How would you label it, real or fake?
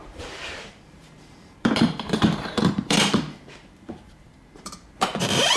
fake